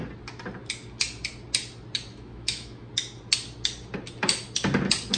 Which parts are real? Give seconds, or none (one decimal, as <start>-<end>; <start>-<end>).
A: 0.0-2.1; 2.9-5.2